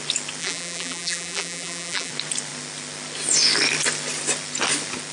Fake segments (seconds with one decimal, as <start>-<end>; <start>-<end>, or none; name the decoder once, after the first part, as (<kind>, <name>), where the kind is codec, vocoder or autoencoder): 0.4-2.1 (vocoder, BigVGAN v2)